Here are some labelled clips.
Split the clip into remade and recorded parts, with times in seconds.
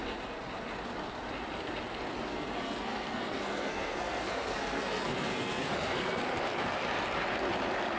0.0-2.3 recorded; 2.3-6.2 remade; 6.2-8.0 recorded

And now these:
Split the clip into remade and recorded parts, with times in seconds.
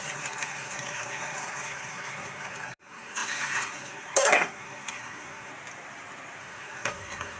0.0-5.5 remade; 5.5-6.4 recorded; 6.4-7.4 remade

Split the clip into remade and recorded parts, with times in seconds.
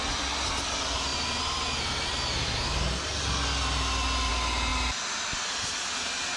0.0-6.4 recorded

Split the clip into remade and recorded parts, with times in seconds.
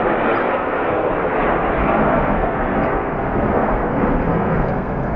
0.0-0.4 recorded; 0.4-1.1 remade; 1.1-1.8 recorded; 1.8-5.2 remade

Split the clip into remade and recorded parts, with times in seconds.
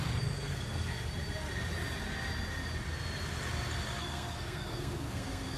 0.0-0.9 remade; 0.9-4.0 recorded; 4.0-5.6 remade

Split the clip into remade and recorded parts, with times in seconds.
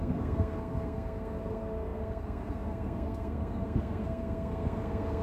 0.0-5.2 remade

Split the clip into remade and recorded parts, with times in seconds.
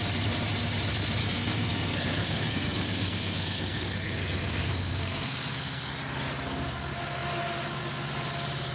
0.0-1.2 recorded; 1.2-5.9 remade; 5.9-8.7 recorded